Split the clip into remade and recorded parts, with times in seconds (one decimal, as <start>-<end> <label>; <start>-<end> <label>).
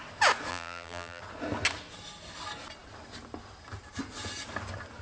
0.0-0.5 recorded; 0.5-1.2 remade; 1.2-5.0 recorded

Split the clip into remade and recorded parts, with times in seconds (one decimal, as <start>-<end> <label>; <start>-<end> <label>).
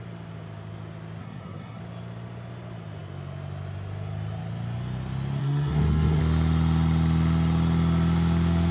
0.0-1.2 recorded; 1.2-1.8 remade; 1.8-5.4 recorded; 5.4-6.2 remade; 6.2-8.7 recorded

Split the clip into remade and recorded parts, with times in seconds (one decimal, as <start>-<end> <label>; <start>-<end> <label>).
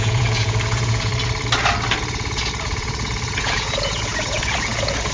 0.0-1.1 remade; 1.1-2.0 recorded; 2.0-5.1 remade